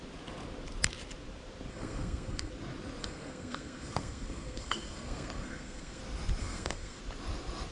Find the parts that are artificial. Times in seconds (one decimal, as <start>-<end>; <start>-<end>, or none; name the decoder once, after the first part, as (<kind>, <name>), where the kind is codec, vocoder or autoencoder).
1.7-2.5 (codec, SNAC); 3.0-6.0; 6.4-7.0